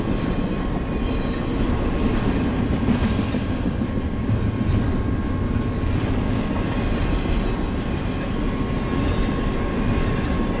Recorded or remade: recorded